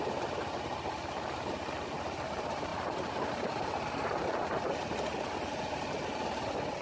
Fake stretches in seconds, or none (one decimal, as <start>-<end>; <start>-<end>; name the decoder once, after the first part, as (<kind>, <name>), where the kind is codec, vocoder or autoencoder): none